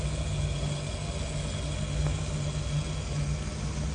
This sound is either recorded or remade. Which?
recorded